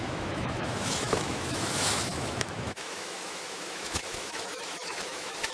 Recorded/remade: remade